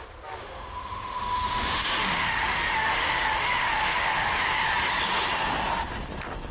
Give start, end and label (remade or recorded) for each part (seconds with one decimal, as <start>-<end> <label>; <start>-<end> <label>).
0.0-0.4 recorded; 0.4-4.3 remade; 4.3-6.5 recorded